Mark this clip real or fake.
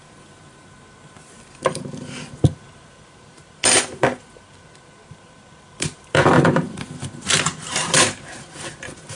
fake